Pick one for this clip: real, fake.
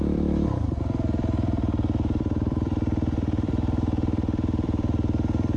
fake